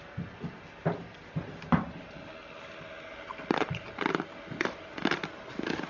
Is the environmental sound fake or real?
real